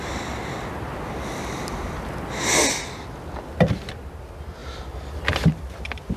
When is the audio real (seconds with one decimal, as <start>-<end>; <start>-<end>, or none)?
0.0-6.2